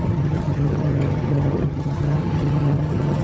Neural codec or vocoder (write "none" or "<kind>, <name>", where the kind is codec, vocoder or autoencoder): vocoder, HiFi-GAN